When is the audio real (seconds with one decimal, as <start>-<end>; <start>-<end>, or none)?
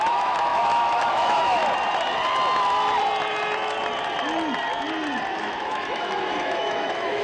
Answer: 1.6-5.4